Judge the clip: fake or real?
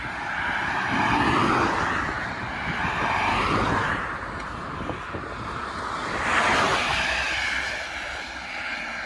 real